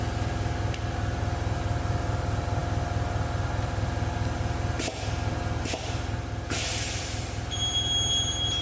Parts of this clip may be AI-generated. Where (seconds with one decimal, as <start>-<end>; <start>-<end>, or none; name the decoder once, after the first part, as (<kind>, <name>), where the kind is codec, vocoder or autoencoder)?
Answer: none